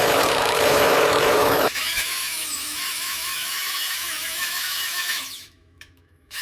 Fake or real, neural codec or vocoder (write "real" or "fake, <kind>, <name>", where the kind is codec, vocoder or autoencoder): fake, autoencoder, DAC-VAE